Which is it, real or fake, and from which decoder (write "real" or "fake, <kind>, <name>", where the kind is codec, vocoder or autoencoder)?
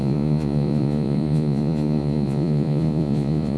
fake, vocoder, Vocos